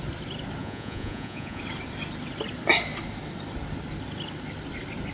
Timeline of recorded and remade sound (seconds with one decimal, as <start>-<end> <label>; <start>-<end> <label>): 0.0-0.6 recorded; 0.6-1.6 remade; 1.6-5.1 recorded

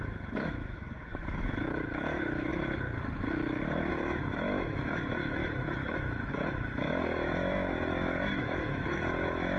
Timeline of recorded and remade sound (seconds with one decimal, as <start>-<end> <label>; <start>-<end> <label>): 0.0-2.5 remade; 2.5-3.9 recorded; 3.9-9.6 remade